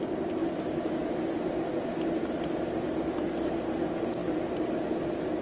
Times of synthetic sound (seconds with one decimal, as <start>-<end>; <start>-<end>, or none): none